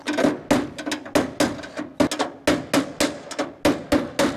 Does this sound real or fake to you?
real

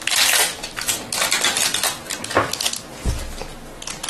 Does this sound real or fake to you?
real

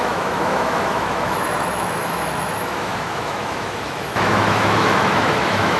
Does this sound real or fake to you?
fake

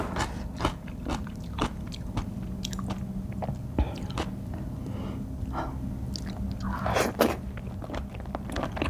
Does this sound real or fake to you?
real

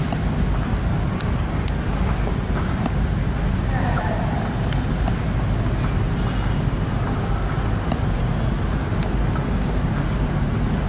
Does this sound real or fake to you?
real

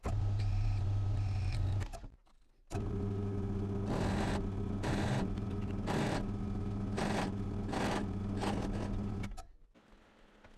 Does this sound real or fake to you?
real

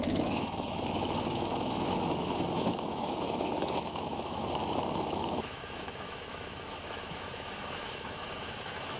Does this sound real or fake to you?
fake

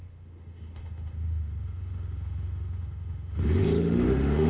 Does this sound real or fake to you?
fake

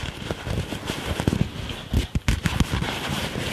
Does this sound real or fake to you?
real